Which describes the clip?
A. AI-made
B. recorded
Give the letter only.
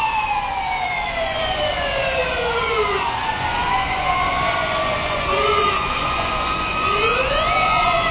A